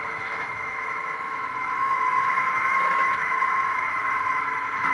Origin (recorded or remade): remade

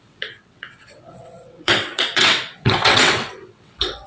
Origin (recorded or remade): remade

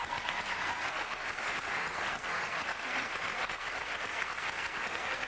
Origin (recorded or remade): remade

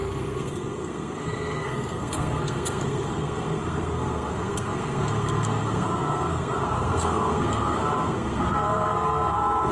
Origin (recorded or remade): remade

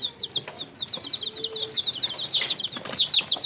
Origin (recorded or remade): recorded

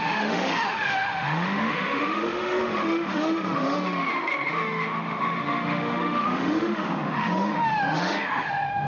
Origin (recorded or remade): remade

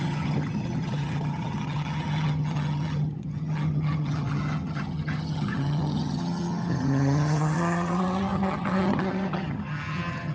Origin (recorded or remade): remade